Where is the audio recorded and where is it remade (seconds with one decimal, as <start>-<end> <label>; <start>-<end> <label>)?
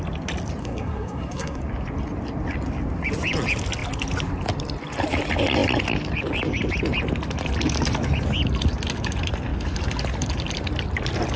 0.0-0.6 recorded; 0.6-1.6 remade; 1.6-11.4 recorded